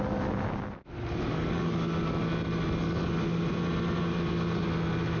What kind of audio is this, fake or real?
real